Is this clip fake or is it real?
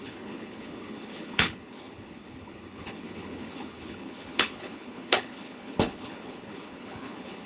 fake